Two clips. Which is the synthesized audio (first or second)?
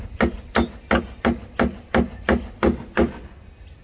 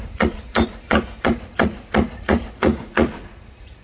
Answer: second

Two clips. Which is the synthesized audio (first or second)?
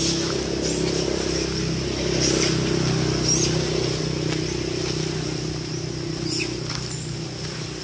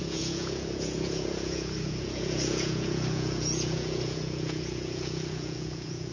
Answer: second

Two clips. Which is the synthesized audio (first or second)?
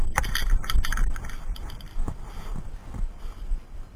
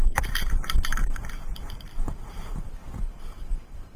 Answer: second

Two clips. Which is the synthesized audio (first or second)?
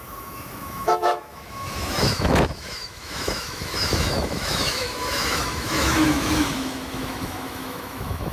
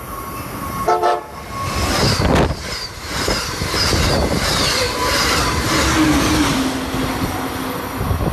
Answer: first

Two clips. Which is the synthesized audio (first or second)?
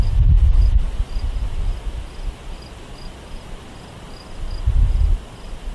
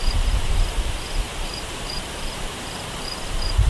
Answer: second